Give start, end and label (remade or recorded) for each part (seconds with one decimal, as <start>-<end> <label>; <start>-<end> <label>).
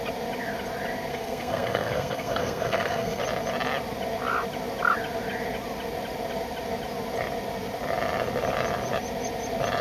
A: 0.0-1.1 recorded; 1.1-3.2 remade; 3.2-9.8 recorded